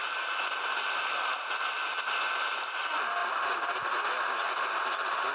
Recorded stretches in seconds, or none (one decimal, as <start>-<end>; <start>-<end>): 0.0-5.3